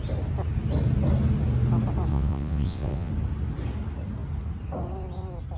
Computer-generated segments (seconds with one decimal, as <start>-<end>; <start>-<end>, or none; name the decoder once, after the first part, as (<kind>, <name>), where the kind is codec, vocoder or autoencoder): 2.1-3.1 (vocoder, WaveNeXt)